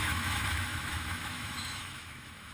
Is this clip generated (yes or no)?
yes